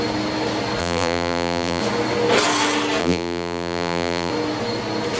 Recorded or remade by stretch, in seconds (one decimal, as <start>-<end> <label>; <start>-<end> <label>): 0.0-0.8 recorded; 0.8-1.8 remade; 1.8-3.0 recorded; 3.0-4.3 remade; 4.3-5.2 recorded